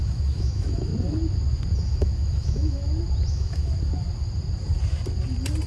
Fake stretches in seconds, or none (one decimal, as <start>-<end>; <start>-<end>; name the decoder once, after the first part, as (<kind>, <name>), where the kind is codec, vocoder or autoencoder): 0.0-0.9 (autoencoder, DAC-VAE); 1.9-2.8; 3.3-3.7